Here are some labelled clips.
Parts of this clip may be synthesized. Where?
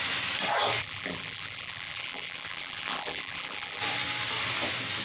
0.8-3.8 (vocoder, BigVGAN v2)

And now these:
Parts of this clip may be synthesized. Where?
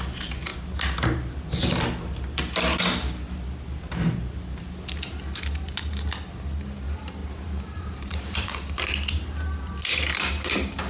7.2-8.8 (vocoder, BigVGAN v2)